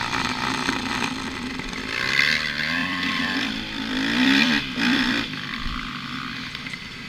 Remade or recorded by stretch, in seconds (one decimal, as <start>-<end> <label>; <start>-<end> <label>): 0.0-2.8 recorded; 2.8-5.9 remade; 5.9-7.1 recorded